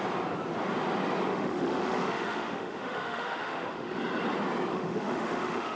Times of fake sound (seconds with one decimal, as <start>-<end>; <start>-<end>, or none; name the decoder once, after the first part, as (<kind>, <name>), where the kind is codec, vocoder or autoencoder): 1.3-4.0 (autoencoder, DAC-VAE); 4.7-5.8